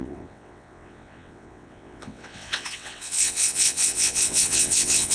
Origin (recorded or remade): remade